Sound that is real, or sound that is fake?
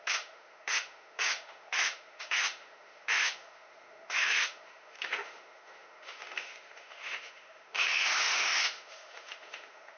fake